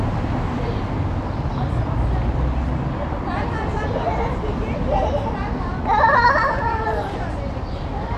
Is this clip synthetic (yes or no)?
no